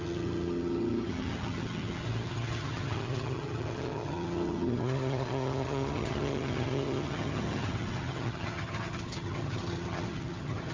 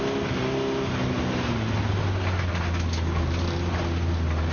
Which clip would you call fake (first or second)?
first